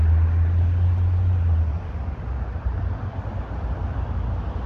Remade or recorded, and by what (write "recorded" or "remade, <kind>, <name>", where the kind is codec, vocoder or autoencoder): recorded